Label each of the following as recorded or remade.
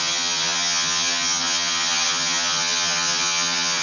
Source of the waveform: remade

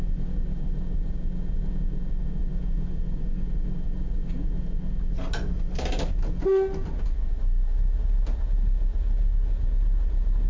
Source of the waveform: recorded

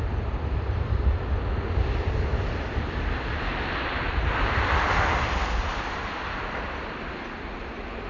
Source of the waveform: recorded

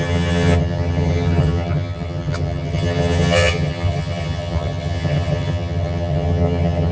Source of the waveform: remade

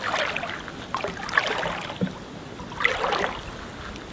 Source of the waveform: recorded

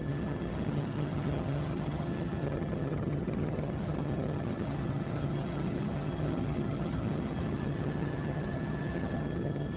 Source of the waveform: remade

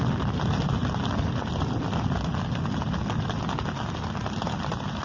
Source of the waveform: recorded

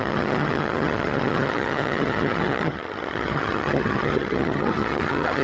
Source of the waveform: remade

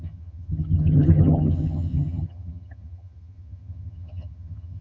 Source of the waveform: remade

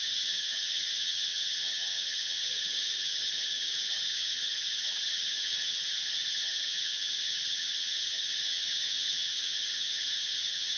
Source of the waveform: remade